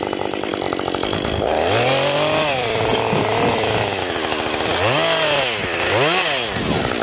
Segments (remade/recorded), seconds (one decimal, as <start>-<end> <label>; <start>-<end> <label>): 0.0-0.5 recorded; 0.5-4.7 remade; 4.7-7.0 recorded